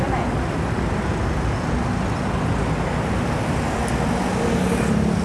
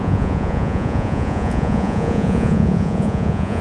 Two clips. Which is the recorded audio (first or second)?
first